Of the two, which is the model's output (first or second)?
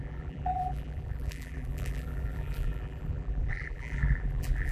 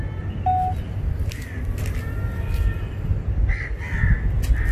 first